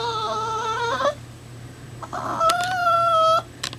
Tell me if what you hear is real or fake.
real